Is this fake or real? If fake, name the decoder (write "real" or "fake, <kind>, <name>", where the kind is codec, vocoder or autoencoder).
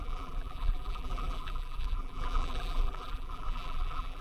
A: fake, vocoder, BigVGAN v2